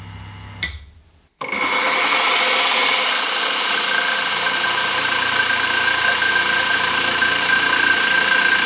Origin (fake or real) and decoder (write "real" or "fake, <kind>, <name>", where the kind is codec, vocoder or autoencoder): real